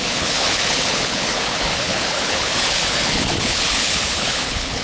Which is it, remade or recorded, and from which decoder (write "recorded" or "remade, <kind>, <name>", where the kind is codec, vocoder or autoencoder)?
remade, codec, HILCodec